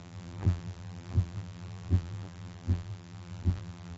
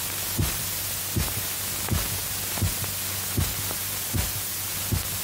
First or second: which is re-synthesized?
first